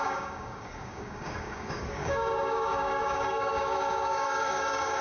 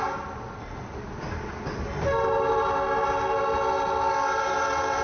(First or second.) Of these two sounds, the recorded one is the second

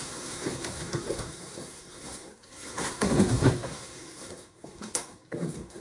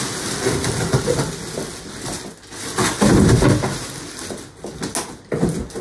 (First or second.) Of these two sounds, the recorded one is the second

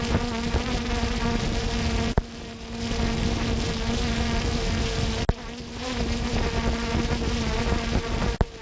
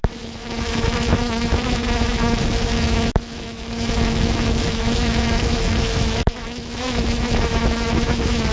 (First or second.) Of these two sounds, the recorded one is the first